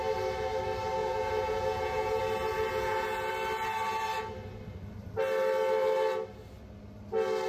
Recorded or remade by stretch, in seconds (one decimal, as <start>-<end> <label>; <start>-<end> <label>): 0.0-1.0 recorded; 1.0-2.2 remade; 2.2-2.7 recorded; 2.7-3.3 remade; 3.3-7.5 recorded